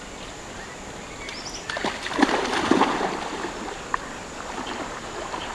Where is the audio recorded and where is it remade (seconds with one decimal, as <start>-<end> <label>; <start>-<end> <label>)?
0.0-5.5 recorded